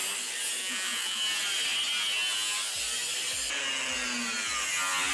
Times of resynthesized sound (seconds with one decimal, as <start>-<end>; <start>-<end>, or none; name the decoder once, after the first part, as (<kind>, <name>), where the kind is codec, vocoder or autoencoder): 0.6-1.2 (vocoder, Vocos)